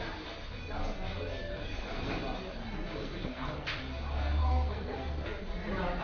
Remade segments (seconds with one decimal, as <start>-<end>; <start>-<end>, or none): 1.5-2.1; 3.0-3.8; 4.4-5.4